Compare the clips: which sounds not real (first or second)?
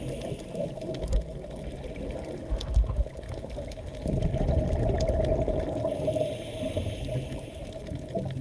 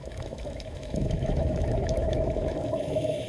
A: second